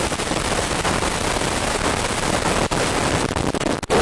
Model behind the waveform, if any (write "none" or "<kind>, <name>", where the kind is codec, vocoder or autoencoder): none